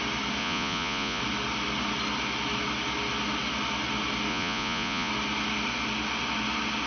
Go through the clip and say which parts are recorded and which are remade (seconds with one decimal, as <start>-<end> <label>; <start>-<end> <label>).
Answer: 0.0-0.4 recorded; 0.4-1.2 remade; 1.2-4.3 recorded; 4.3-5.1 remade; 5.1-6.9 recorded